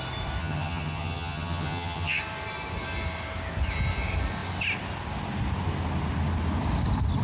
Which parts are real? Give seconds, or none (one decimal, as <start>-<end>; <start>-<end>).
0.0-0.4; 2.2-7.2